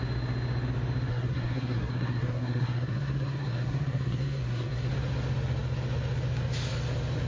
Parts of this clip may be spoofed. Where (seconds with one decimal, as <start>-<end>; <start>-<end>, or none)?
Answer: 1.1-4.9